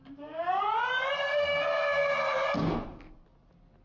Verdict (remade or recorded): recorded